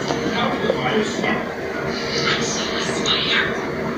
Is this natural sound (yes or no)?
yes